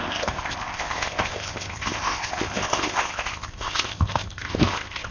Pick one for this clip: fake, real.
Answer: fake